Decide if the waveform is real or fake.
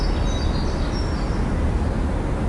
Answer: real